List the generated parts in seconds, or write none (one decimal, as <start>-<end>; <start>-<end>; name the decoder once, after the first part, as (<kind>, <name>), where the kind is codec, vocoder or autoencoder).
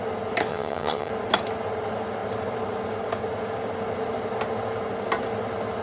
0.5-1.1 (vocoder, HiFi-GAN)